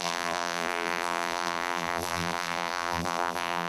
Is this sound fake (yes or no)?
yes